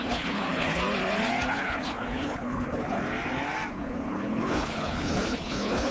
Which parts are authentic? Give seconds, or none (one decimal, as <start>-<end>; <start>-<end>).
0.8-1.5; 3.0-3.7